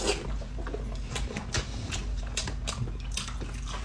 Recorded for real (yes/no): yes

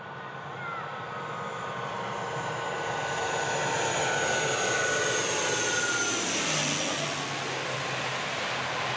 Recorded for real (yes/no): yes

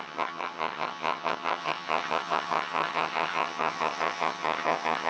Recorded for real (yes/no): no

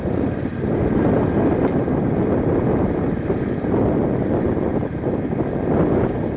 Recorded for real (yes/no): yes